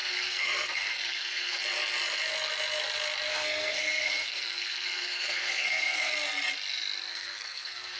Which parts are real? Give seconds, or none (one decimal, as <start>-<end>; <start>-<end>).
1.6-3.3; 6.1-7.1